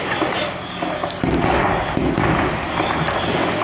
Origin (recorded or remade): recorded